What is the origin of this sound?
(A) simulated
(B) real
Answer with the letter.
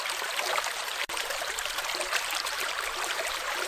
A